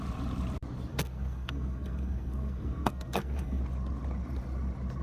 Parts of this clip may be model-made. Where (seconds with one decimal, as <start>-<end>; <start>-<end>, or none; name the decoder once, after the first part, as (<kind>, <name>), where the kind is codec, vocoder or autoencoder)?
0.9-3.6 (codec, SNAC)